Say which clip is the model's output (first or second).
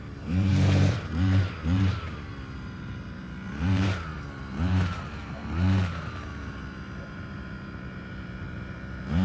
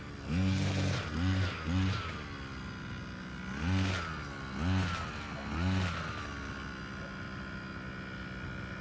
first